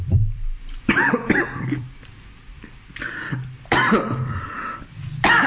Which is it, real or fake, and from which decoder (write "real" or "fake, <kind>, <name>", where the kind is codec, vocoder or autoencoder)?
fake, vocoder, BigVGAN v2